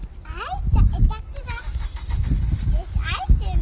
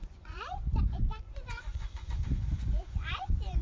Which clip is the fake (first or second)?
second